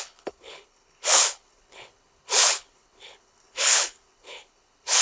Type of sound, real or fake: fake